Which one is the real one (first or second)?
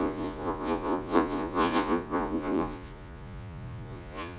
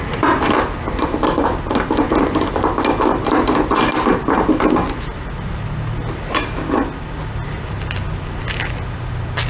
second